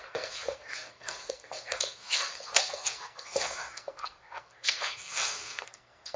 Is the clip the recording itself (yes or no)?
no